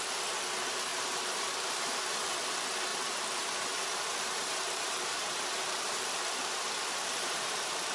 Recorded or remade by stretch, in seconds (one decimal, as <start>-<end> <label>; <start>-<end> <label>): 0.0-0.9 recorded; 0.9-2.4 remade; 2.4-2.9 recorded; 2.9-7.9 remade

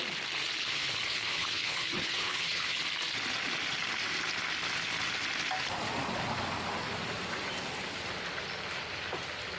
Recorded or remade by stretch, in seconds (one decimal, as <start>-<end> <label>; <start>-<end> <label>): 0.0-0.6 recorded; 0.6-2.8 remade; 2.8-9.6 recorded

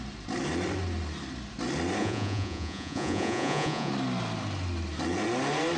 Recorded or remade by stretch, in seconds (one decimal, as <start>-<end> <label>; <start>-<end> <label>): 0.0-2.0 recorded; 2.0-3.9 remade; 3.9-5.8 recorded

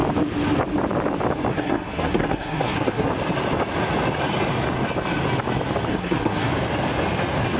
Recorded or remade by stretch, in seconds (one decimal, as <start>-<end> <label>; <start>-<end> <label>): 0.0-1.5 recorded; 1.5-3.1 remade; 3.1-5.9 recorded; 5.9-6.5 remade; 6.5-7.6 recorded

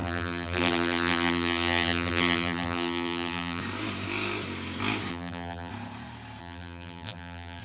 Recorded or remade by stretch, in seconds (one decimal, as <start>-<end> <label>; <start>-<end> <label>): 0.0-3.6 remade; 3.6-5.1 recorded; 5.1-5.7 remade; 5.7-6.4 recorded; 6.4-7.6 remade

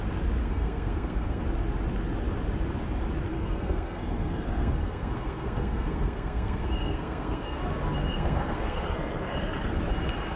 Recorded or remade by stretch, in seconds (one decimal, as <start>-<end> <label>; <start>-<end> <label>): 0.0-0.4 recorded; 0.4-1.4 remade; 1.4-3.3 recorded; 3.3-7.6 remade; 7.6-8.1 recorded; 8.1-9.8 remade; 9.8-10.4 recorded

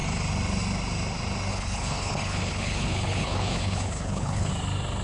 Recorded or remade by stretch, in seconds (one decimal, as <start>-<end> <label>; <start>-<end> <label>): 0.0-1.5 recorded; 1.5-4.5 remade; 4.5-5.0 recorded

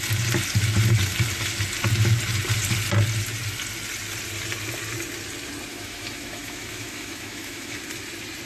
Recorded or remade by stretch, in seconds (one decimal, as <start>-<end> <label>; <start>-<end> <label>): 0.0-5.7 recorded; 5.7-7.8 remade; 7.8-8.5 recorded